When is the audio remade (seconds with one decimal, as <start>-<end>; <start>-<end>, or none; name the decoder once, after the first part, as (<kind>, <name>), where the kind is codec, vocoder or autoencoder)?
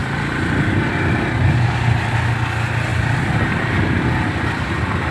0.0-0.9 (vocoder, BigVGAN v2); 2.9-4.0